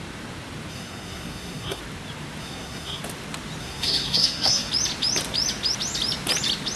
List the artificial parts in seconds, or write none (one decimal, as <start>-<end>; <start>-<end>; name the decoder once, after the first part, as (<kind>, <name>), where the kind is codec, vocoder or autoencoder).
0.7-1.8 (codec, SNAC); 2.4-3.0; 3.6-4.7

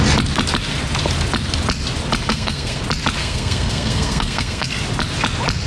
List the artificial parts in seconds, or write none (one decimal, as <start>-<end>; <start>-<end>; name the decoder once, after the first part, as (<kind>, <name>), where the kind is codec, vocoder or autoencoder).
2.3-2.8 (codec, SNAC); 3.2-4.7

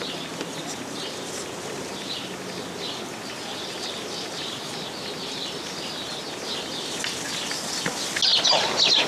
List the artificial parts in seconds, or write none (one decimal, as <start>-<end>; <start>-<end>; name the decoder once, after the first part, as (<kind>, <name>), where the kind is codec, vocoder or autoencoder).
none

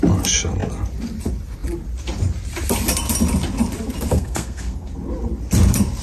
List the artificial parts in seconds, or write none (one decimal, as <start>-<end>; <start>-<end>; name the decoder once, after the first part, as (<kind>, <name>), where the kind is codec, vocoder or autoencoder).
4.1-4.9 (codec, SNAC)

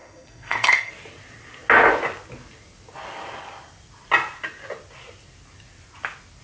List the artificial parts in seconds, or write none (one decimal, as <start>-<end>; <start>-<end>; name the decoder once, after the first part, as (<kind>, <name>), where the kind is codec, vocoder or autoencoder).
0.0-0.9 (codec, SNAC)

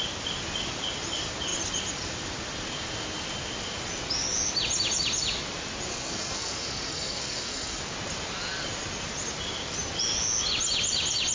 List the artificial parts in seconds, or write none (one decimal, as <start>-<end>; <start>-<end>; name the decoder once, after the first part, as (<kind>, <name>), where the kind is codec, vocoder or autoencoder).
5.9-7.8 (codec, SNAC)

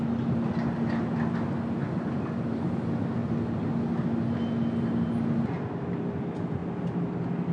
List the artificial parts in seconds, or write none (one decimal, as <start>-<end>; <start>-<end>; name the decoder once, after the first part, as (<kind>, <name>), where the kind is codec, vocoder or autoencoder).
none